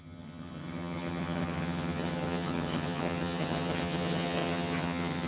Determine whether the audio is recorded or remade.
remade